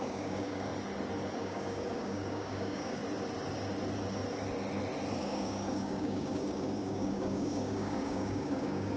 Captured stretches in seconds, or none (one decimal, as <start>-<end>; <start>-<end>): 0.7-1.4; 3.0-5.2